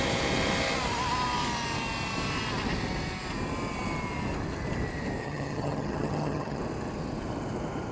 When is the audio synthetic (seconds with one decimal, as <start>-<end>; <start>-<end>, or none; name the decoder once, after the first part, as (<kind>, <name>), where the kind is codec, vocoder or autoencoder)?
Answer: 5.2-6.6 (vocoder, HiFi-GAN)